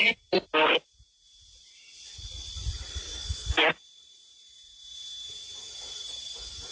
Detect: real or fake real